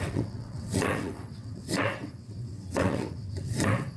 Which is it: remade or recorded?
remade